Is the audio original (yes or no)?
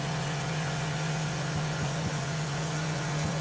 no